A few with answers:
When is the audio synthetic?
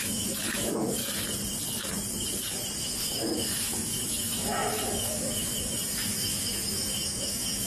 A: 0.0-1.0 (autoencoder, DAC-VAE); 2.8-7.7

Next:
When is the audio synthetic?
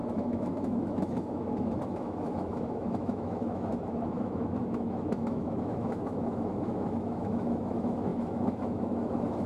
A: 0.0-9.5 (autoencoder, DAC-VAE)